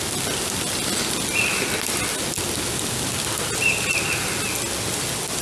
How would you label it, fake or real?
real